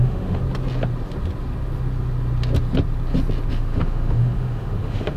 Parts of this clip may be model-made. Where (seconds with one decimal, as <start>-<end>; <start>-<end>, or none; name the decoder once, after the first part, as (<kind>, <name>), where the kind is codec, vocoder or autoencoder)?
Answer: 0.0-0.4 (autoencoder, DAC-VAE); 3.5-5.2